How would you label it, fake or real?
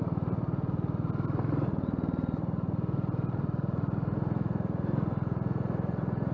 real